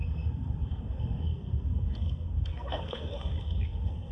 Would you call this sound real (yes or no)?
no